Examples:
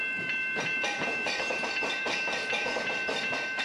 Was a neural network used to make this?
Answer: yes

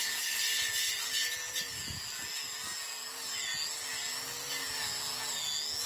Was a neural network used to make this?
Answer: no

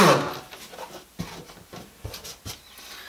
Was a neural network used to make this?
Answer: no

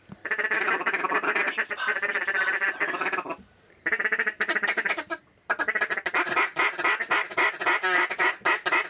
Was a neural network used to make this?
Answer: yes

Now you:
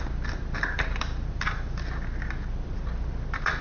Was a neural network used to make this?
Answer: yes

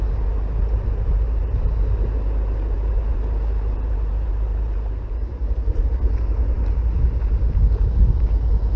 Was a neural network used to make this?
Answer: no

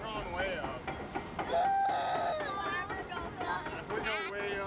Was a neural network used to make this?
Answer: no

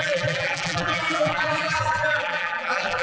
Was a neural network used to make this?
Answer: yes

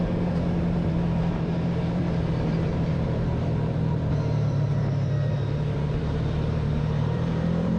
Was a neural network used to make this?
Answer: yes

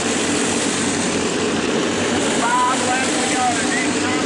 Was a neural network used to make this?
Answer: yes